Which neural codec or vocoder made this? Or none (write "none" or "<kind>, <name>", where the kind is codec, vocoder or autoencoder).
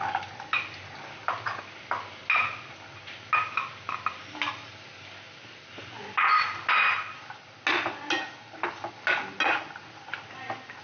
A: none